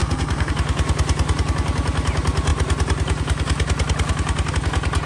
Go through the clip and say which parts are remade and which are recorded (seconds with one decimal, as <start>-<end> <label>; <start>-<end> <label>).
0.0-0.5 remade; 0.5-5.1 recorded